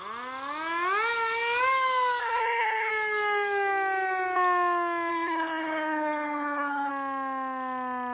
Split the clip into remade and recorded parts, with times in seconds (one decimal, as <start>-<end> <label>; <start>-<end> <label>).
0.0-2.2 recorded; 2.2-2.9 remade; 2.9-5.1 recorded; 5.1-6.9 remade; 6.9-8.1 recorded